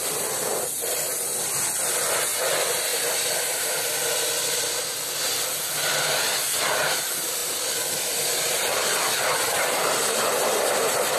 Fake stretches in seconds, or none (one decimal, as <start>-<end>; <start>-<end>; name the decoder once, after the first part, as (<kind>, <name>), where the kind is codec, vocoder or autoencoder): none